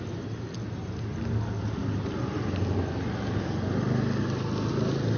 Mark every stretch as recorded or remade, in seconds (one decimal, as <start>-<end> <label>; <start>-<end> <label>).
0.0-5.2 recorded